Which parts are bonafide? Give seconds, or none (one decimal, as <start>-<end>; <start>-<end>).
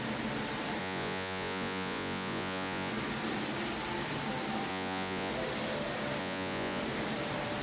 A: 0.0-0.8; 2.9-4.7; 5.3-6.2; 6.8-7.6